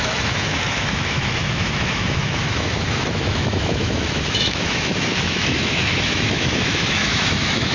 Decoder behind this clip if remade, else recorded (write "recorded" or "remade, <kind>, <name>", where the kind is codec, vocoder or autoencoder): remade, autoencoder, DAC-VAE